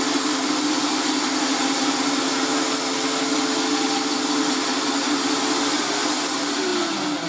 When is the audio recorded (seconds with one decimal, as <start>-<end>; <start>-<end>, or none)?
0.0-7.3